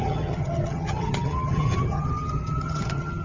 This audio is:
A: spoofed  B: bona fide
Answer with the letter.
A